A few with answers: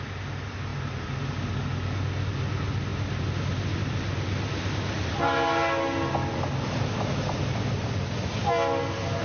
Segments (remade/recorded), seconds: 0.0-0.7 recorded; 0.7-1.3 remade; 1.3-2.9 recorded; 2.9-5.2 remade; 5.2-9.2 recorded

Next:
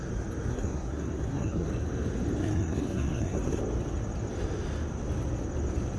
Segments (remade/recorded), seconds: 0.0-0.5 recorded; 0.5-1.7 remade; 1.7-2.4 recorded; 2.4-3.6 remade; 3.6-6.0 recorded

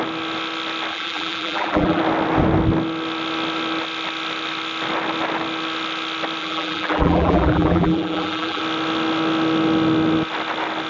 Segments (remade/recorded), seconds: 0.0-0.9 recorded; 0.9-2.0 remade; 2.0-6.4 recorded; 6.4-8.6 remade; 8.6-10.9 recorded

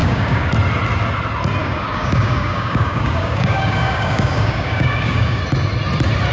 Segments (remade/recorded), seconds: 0.0-0.5 remade; 0.5-1.6 recorded; 1.6-5.4 remade; 5.4-6.3 recorded

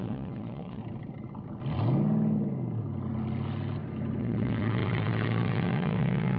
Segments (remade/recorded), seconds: 0.0-0.8 remade; 0.8-4.2 recorded; 4.2-6.4 remade